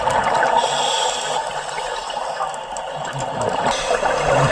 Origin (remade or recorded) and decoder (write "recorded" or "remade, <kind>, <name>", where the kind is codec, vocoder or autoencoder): recorded